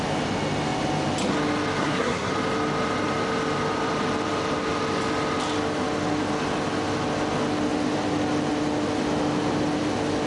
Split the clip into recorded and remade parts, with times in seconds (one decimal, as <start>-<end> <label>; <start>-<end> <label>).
0.0-1.8 recorded; 1.8-2.3 remade; 2.3-10.3 recorded